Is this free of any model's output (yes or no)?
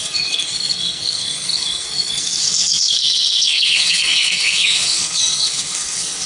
no